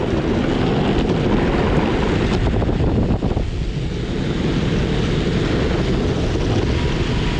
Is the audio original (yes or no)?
yes